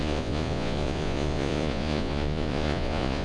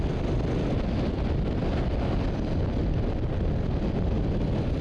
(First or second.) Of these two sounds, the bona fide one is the second